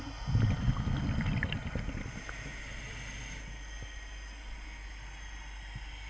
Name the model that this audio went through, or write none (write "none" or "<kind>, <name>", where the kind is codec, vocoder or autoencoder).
none